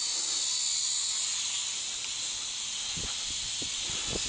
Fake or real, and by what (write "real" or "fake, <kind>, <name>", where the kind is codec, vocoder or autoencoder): real